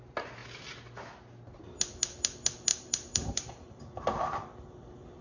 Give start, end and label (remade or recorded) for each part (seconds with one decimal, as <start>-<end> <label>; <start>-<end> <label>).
0.0-2.7 recorded; 2.7-3.8 remade; 3.8-5.2 recorded

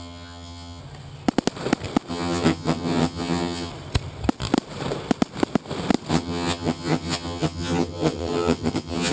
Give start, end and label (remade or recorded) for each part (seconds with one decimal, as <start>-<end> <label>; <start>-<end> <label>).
0.0-0.8 remade; 0.8-2.1 recorded; 2.1-3.7 remade; 3.7-6.1 recorded; 6.1-9.1 remade

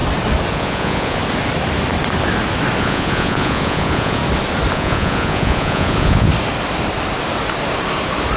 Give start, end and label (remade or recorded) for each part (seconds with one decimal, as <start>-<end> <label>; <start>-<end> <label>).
0.0-0.5 recorded; 0.5-1.2 remade; 1.2-2.8 recorded; 2.8-4.2 remade; 4.2-4.7 recorded; 4.7-6.3 remade; 6.3-8.4 recorded

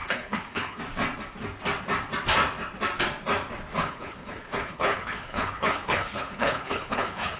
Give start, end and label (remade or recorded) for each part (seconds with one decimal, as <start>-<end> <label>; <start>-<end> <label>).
0.0-0.8 remade; 0.8-3.8 recorded; 3.8-7.4 remade

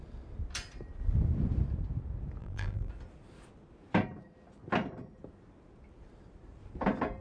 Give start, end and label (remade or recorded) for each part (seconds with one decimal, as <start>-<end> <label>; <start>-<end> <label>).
0.0-2.4 recorded; 2.4-2.9 remade; 2.9-7.2 recorded